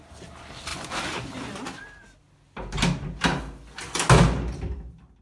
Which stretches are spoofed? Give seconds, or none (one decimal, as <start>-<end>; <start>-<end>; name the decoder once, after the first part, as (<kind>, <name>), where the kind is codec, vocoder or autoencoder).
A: 0.7-1.8 (vocoder, BigVGAN v2)